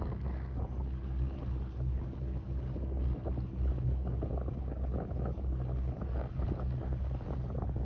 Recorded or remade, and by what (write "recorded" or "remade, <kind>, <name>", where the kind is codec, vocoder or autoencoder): remade, codec, DAC